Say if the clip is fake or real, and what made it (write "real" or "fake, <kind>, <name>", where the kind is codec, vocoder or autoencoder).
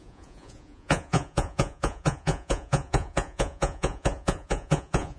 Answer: fake, vocoder, Vocos